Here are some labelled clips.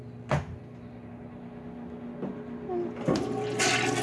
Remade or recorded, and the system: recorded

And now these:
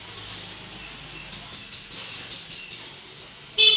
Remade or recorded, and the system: recorded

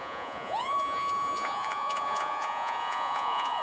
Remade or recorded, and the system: remade, vocoder, Vocos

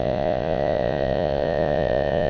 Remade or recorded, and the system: remade, vocoder, Vocos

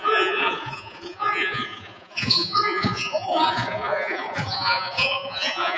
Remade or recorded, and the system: remade, vocoder, Vocos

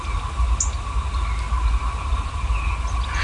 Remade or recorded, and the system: recorded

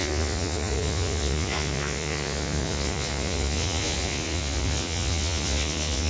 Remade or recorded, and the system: remade, vocoder, Vocos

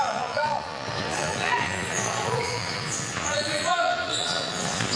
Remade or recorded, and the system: remade, vocoder, Vocos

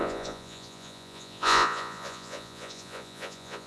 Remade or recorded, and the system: remade, vocoder, Vocos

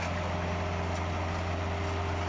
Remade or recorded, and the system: recorded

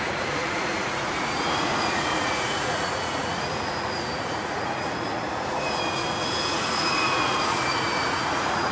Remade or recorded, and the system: remade, vocoder, Vocos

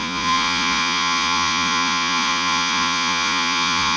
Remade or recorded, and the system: remade, vocoder, Vocos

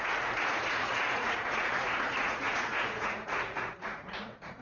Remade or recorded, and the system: remade, vocoder, Vocos